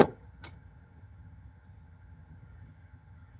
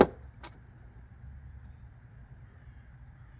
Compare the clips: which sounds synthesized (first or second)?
first